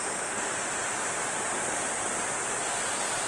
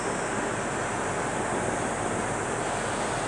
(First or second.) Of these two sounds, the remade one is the first